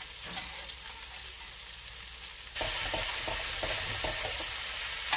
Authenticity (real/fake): real